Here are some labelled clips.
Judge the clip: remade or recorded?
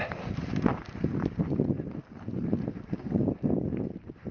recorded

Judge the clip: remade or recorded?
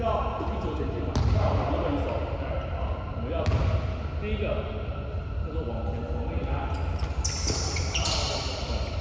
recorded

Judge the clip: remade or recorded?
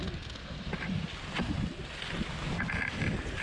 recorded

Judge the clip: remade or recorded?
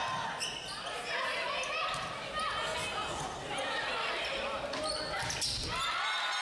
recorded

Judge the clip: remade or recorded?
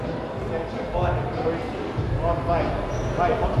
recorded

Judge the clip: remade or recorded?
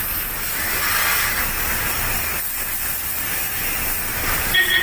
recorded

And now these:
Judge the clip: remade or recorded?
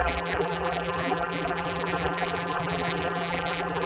remade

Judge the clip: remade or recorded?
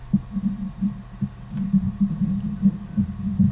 recorded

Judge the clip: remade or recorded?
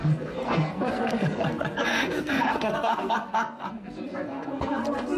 remade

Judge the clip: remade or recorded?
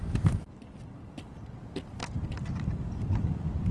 recorded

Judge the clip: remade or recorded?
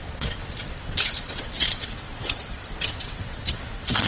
remade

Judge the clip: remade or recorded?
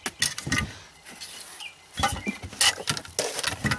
recorded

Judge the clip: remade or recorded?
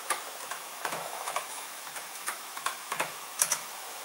remade